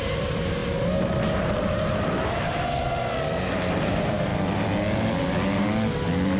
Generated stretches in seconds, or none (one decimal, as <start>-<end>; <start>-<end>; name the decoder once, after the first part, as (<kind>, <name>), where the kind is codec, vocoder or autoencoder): 0.0-0.6 (vocoder, BigVGAN v2); 3.4-4.3